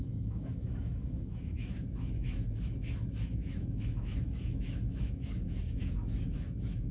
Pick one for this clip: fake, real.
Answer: fake